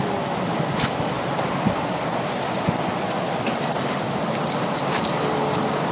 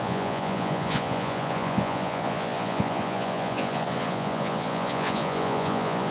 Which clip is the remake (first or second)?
second